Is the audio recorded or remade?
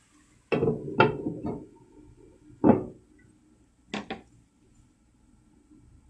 recorded